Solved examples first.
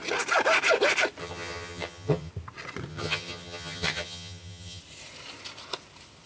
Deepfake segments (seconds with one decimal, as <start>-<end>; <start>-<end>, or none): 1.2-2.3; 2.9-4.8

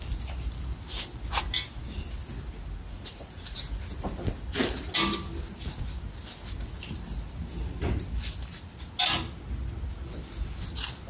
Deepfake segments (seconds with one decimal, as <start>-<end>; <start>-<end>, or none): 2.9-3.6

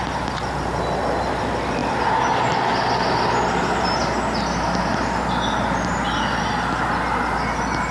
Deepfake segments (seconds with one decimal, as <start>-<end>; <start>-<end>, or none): none

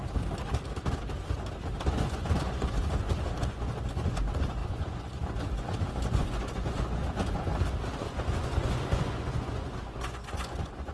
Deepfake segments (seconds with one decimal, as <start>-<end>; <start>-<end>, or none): 1.9-7.5; 8.0-10.9

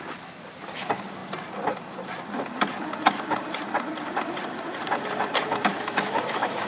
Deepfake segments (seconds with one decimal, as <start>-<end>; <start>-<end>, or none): 5.7-6.7

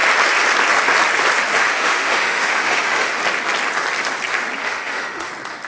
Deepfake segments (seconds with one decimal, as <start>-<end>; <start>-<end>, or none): 1.6-3.1; 4.6-5.3